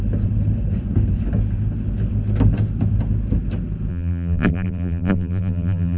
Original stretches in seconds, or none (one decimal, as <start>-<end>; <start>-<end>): 0.0-3.9